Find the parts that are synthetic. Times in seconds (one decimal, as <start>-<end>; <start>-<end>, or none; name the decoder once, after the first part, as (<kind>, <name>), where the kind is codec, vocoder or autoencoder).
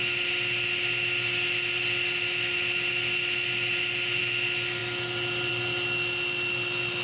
none